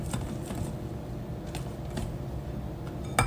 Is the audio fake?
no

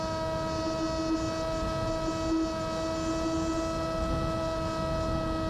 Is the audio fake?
no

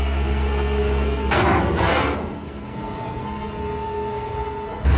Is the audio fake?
yes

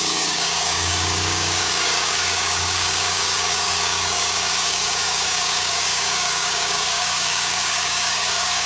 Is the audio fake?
yes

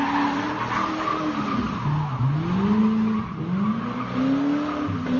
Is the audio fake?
no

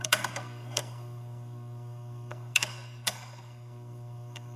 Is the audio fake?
yes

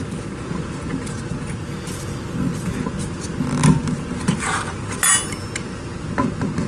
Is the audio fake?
no